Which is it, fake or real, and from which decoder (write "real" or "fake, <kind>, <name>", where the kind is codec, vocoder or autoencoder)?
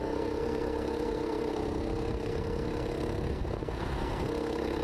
fake, codec, SNAC